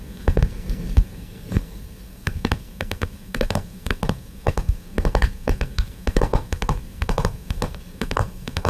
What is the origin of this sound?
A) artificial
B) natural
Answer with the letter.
A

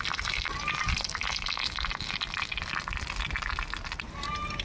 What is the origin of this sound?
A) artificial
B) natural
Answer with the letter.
B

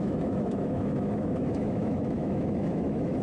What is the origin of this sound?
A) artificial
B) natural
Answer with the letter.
A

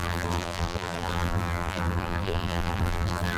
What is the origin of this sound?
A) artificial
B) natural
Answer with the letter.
A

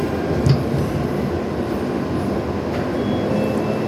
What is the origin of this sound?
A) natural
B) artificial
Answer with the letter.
A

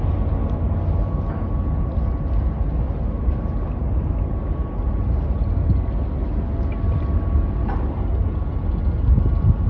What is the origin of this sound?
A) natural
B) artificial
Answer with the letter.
A